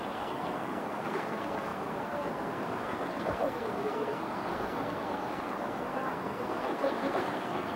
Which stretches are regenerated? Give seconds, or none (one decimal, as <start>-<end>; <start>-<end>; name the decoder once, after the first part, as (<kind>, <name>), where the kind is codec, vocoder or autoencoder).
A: 0.0-7.8 (codec, SNAC)